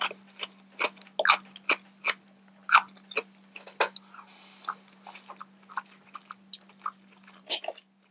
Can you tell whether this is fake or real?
real